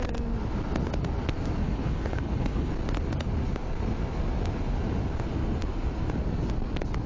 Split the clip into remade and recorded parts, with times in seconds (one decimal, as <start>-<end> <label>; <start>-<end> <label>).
0.0-1.6 recorded; 1.6-2.7 remade; 2.7-7.1 recorded